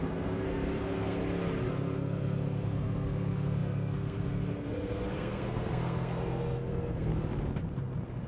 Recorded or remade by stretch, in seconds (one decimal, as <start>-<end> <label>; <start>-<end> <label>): 0.0-1.2 remade; 1.2-1.7 recorded; 1.7-7.1 remade; 7.1-8.3 recorded